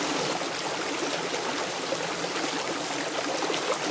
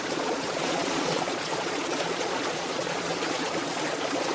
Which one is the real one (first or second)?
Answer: first